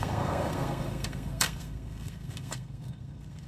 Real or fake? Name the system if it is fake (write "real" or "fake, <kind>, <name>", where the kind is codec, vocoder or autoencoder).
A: fake, codec, SNAC